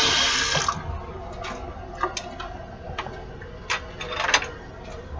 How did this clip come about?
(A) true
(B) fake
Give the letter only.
A